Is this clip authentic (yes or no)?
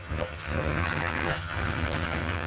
no